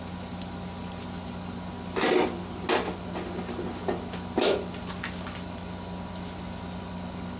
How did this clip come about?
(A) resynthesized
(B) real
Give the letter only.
B